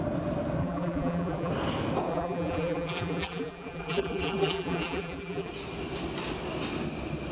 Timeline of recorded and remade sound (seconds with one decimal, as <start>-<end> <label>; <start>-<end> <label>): 0.0-0.6 recorded; 0.6-1.5 remade; 1.5-2.1 recorded; 2.1-5.5 remade; 5.5-7.3 recorded